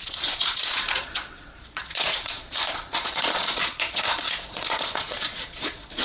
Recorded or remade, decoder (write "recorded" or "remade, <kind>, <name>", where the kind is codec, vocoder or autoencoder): remade, vocoder, Vocos